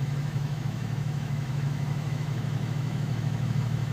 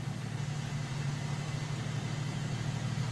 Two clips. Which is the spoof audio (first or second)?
first